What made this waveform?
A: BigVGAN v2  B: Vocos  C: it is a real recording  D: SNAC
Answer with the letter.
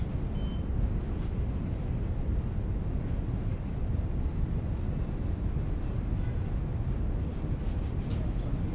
C